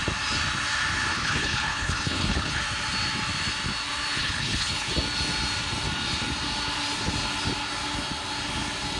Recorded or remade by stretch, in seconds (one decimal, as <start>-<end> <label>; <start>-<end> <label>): 0.0-1.1 recorded; 1.1-2.6 remade; 2.6-4.2 recorded; 4.2-4.9 remade; 4.9-9.0 recorded